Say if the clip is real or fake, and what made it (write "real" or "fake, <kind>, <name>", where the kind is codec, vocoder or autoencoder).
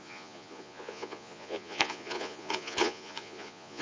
fake, vocoder, Vocos